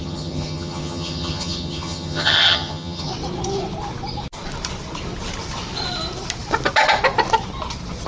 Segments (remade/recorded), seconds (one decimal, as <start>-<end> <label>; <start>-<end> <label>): 0.0-3.1 remade; 3.1-8.1 recorded

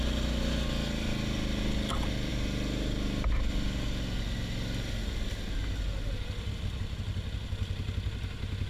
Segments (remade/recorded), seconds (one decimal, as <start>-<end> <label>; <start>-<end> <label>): 0.0-8.7 recorded